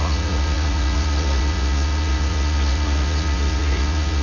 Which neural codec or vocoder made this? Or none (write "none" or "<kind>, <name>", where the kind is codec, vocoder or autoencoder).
vocoder, Vocos